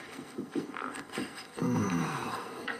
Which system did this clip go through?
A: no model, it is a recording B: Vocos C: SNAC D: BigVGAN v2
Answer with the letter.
C